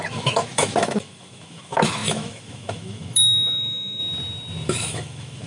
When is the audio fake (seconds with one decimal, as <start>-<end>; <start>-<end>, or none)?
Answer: 0.0-4.0; 4.7-5.5